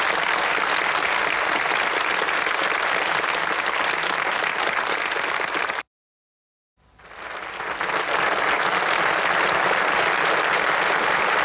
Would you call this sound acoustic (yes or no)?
yes